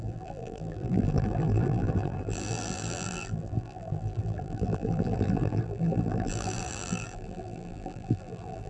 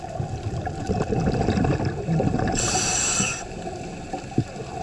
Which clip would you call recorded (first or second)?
second